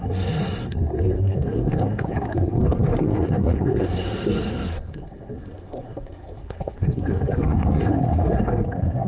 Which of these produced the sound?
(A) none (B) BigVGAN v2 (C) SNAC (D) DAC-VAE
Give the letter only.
C